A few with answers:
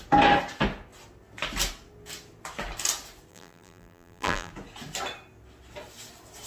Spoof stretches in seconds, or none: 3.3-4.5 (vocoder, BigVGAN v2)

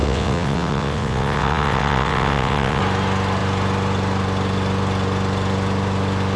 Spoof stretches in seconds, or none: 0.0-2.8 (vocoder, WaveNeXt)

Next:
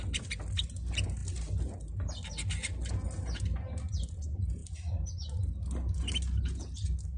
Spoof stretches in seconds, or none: none